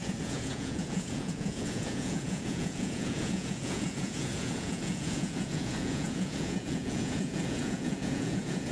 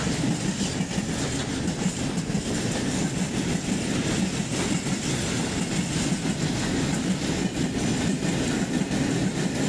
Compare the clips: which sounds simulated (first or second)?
first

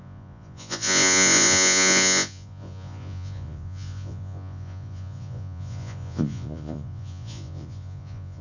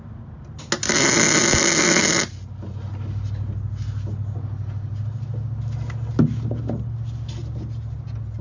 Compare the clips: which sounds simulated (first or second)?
first